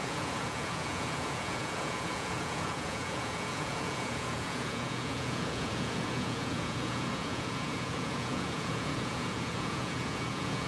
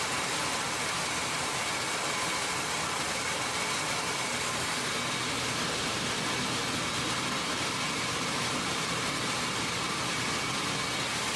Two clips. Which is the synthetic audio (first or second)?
first